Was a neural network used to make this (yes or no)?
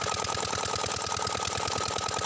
no